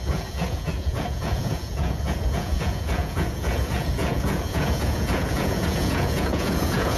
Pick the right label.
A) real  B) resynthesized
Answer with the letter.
B